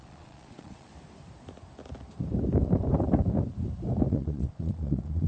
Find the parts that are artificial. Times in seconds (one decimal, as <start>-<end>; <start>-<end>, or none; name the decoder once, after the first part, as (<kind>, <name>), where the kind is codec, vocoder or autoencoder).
0.0-0.9 (vocoder, Vocos); 4.1-5.3